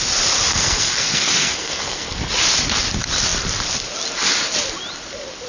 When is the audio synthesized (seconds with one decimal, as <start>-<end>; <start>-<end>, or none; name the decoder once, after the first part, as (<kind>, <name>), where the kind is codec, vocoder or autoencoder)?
0.5-2.3 (codec, SNAC)